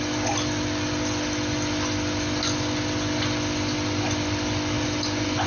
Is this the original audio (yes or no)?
yes